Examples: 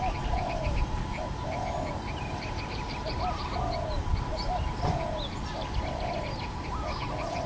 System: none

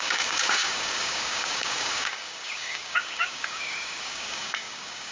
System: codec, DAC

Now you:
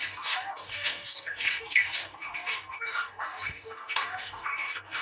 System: codec, DAC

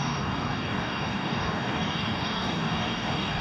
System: codec, DAC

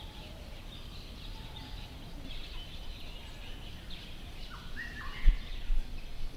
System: none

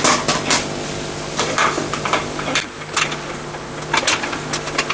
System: none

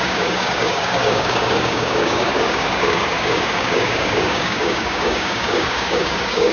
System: codec, DAC